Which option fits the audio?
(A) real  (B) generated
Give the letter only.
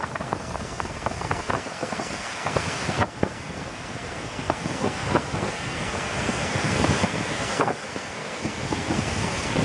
B